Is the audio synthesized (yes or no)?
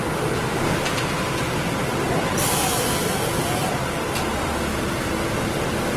no